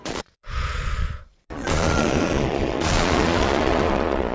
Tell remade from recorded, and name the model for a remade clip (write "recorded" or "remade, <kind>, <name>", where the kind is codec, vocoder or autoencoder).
remade, vocoder, Vocos